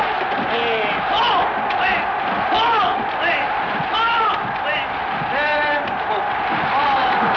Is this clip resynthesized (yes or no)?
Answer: no